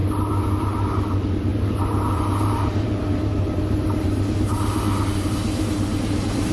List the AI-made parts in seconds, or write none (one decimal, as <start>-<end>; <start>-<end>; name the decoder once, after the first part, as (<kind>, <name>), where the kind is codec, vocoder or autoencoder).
0.6-6.5 (vocoder, BigVGAN v2)